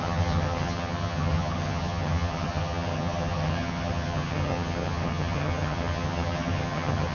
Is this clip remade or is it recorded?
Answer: remade